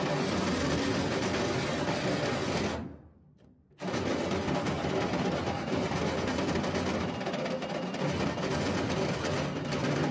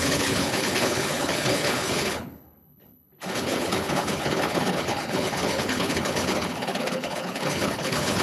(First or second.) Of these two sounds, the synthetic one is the second